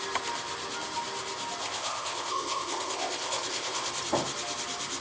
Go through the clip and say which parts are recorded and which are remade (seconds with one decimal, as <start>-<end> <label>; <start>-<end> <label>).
0.0-1.6 recorded; 1.6-3.9 remade; 3.9-5.0 recorded